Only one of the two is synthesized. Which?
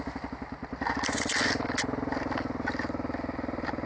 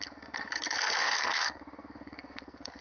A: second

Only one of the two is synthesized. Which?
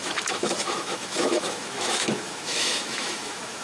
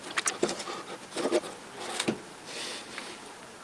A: first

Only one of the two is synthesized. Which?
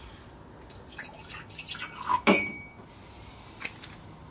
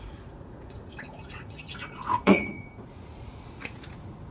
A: second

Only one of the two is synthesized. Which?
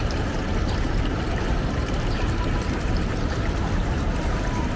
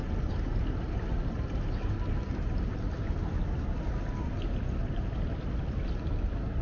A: first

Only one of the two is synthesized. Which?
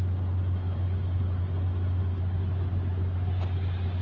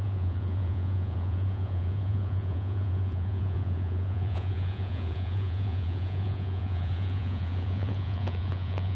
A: second